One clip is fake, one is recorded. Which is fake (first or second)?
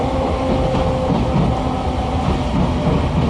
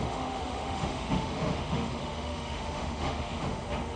second